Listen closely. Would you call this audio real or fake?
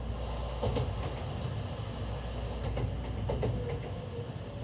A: real